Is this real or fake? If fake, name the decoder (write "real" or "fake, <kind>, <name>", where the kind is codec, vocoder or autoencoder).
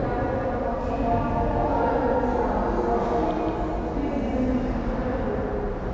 real